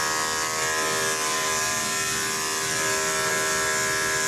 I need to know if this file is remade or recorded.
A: recorded